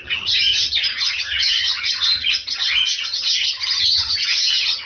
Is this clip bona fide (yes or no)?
no